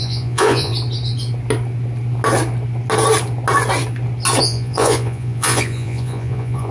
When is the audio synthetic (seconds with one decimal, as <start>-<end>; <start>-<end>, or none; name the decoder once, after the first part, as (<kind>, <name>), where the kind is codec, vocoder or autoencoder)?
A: 0.0-0.7 (vocoder, Vocos); 4.4-6.7

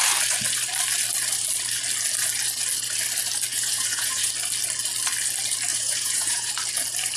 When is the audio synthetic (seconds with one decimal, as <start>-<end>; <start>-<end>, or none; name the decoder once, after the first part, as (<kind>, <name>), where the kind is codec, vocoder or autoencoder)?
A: 3.5-4.3 (vocoder, Vocos); 5.7-6.5

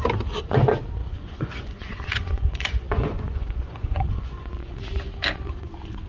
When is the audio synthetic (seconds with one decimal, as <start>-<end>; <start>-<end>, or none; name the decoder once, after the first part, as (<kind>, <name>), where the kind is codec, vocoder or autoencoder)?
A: 1.0-4.7 (vocoder, Vocos)